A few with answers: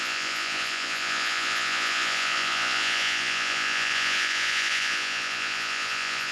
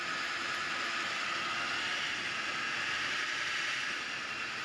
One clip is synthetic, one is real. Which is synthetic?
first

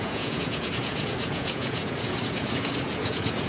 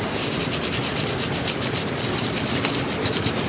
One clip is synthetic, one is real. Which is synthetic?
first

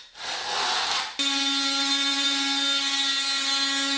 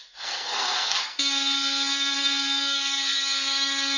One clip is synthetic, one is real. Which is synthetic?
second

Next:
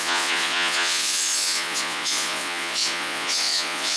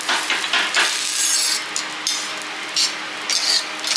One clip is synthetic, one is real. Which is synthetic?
first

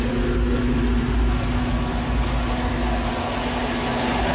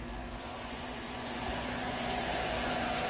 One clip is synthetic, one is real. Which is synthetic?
second